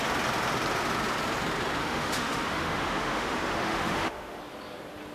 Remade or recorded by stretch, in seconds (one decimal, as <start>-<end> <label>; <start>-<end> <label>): 0.0-1.8 recorded; 1.8-4.4 remade; 4.4-5.1 recorded